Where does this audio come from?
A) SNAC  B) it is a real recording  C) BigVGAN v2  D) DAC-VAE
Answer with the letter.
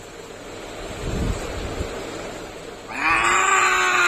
B